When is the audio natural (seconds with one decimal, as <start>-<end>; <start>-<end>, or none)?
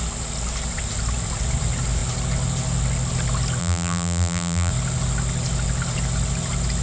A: 0.0-3.6; 4.7-6.8